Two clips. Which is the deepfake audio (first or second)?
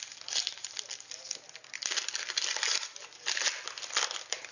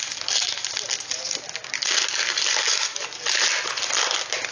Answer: first